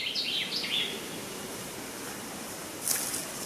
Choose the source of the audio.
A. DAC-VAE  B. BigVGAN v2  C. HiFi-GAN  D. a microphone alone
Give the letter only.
D